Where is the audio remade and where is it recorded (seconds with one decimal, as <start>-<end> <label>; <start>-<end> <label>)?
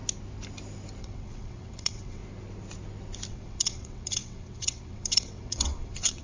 0.0-1.0 recorded; 1.0-2.2 remade; 2.2-3.3 recorded; 3.3-6.2 remade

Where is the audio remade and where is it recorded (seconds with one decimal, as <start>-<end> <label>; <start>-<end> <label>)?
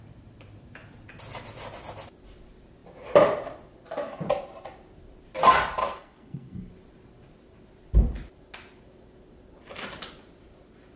0.0-5.8 recorded; 5.8-6.7 remade; 6.7-11.0 recorded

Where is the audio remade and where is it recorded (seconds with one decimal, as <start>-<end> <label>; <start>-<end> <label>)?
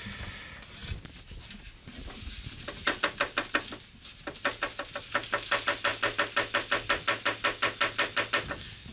0.0-8.9 recorded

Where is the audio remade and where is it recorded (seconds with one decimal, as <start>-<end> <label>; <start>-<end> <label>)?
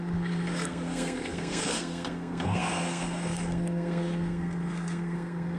0.0-5.6 remade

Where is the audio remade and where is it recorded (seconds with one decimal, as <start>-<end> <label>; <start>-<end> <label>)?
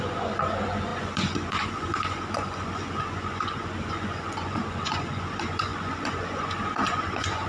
0.0-7.5 remade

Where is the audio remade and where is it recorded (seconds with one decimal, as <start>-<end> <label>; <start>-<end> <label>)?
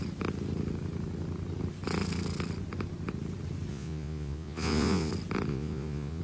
0.0-3.7 recorded; 3.7-5.1 remade; 5.1-5.5 recorded; 5.5-6.2 remade